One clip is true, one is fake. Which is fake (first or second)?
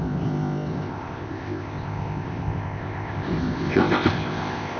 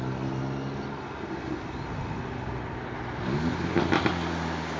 first